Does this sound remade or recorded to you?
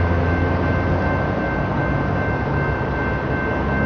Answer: recorded